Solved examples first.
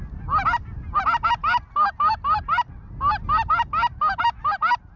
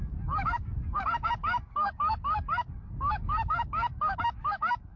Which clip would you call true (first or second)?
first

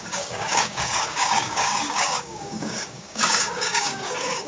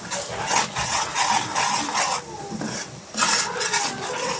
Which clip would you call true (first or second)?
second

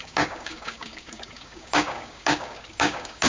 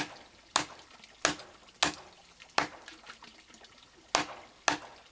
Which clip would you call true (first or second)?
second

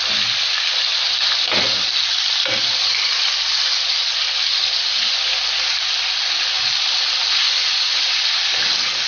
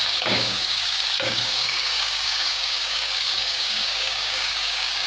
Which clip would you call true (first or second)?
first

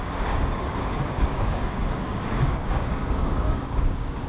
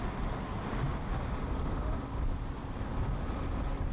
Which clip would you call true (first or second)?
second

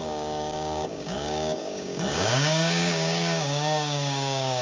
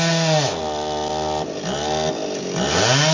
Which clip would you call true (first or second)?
second